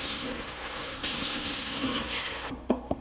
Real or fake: fake